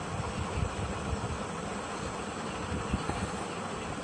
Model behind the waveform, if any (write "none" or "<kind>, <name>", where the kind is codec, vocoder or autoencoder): none